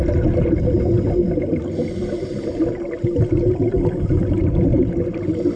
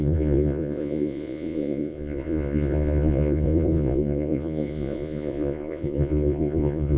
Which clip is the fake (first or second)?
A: second